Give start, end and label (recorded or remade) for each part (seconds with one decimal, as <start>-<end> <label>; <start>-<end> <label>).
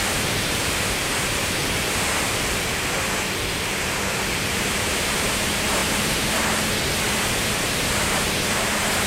0.0-1.6 remade; 1.6-3.5 recorded; 3.5-9.1 remade